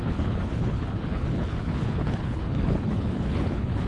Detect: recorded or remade remade